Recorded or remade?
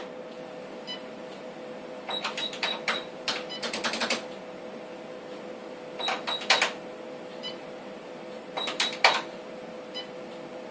remade